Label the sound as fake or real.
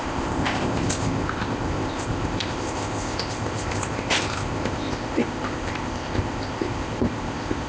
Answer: fake